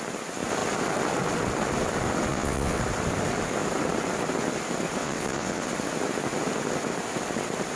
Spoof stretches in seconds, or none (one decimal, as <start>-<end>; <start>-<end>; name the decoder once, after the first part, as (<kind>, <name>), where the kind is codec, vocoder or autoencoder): 2.3-2.8 (vocoder, WaveNeXt); 5.0-5.7